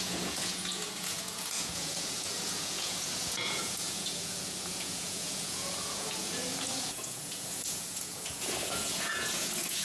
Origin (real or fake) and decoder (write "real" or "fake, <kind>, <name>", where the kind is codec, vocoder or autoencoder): fake, vocoder, Vocos